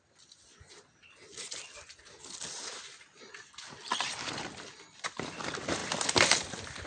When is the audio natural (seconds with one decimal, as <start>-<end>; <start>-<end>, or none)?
0.5-3.3; 5.8-6.9